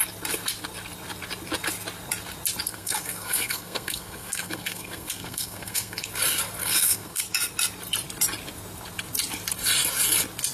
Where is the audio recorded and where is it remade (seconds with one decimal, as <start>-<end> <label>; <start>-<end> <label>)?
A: 0.0-2.7 recorded; 2.7-6.1 remade; 6.1-6.6 recorded; 6.6-7.2 remade; 7.2-10.5 recorded